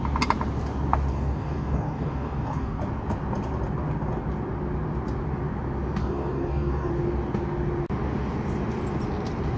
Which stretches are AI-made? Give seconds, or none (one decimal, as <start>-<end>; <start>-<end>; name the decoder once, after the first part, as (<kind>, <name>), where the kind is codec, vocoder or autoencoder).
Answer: 1.1-2.8 (codec, DAC); 6.0-6.9